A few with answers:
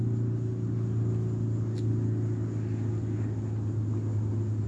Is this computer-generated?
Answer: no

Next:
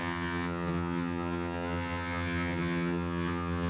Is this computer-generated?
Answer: yes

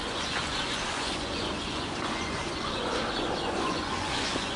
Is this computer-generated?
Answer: yes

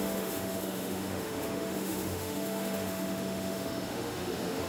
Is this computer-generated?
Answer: yes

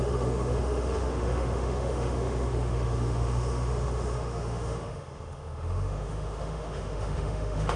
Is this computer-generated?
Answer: yes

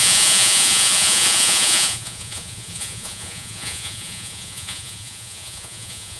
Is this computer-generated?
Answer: yes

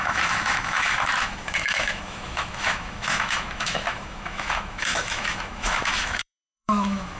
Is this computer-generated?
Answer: yes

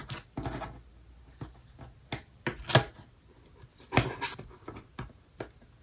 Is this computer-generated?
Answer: no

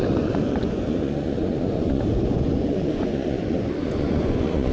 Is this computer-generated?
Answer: yes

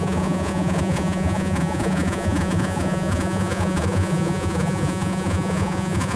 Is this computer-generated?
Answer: yes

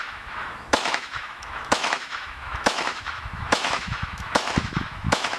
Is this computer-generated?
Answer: yes